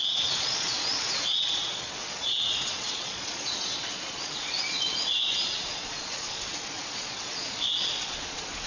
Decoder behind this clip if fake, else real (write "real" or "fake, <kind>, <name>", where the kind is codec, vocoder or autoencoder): fake, vocoder, Vocos